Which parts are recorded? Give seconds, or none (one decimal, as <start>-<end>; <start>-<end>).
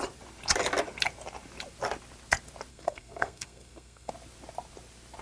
0.0-2.7; 4.1-5.2